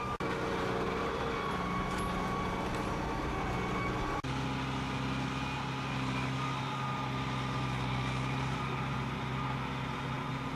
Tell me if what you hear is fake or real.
real